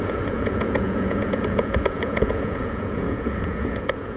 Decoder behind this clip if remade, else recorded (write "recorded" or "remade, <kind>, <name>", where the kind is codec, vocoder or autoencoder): remade, vocoder, Vocos